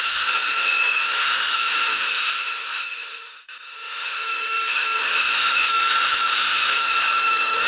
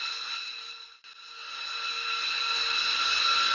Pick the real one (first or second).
second